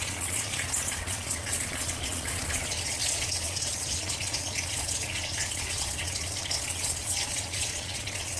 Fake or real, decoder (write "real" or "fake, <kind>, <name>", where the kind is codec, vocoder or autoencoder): fake, vocoder, Vocos